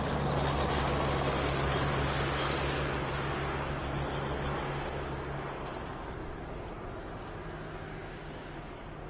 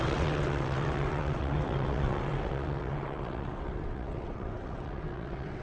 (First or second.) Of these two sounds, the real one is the first